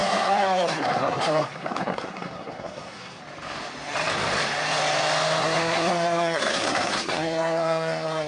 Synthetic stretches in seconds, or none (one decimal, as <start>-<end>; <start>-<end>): 0.0-3.2; 5.4-8.3